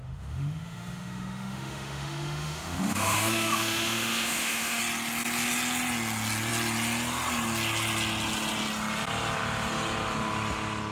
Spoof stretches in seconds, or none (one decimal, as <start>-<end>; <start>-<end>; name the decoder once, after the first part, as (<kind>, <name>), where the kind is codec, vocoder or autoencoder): 0.0-4.8 (autoencoder, DAC-VAE)